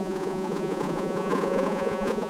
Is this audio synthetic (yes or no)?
yes